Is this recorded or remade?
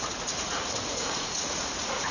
remade